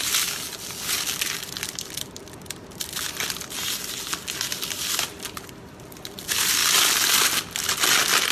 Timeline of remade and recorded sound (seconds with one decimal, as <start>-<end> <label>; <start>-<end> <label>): 0.0-6.6 recorded; 6.6-7.3 remade; 7.3-8.3 recorded